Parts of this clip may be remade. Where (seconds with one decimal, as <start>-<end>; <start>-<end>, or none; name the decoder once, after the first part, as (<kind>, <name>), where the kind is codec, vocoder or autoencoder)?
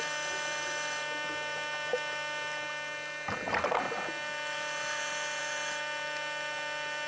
none